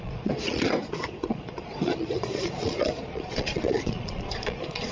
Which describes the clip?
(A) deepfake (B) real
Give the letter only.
A